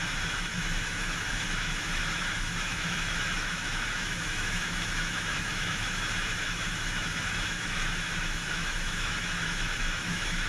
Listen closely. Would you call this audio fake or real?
fake